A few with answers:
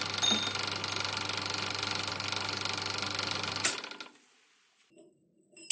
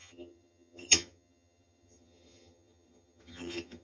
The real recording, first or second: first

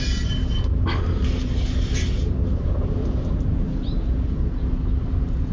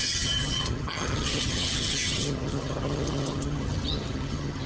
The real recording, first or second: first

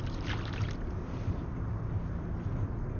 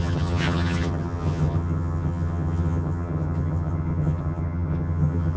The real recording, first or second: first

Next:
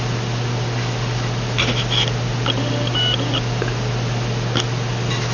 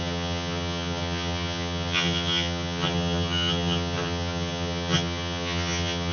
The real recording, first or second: first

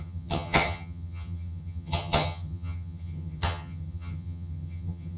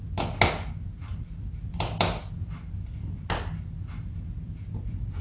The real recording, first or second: second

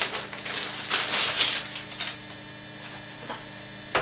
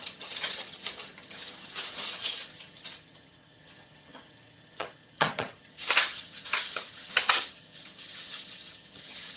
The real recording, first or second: first